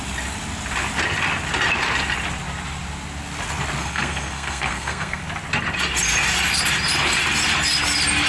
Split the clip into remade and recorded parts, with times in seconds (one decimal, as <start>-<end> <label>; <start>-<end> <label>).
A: 0.0-3.8 recorded; 3.8-5.2 remade; 5.2-8.3 recorded